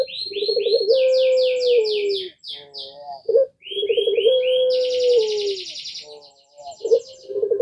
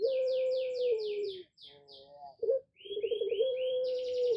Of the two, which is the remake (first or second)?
second